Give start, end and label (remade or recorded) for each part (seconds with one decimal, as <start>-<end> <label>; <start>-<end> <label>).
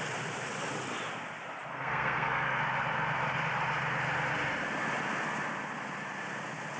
0.0-1.7 recorded; 1.7-2.6 remade; 2.6-6.8 recorded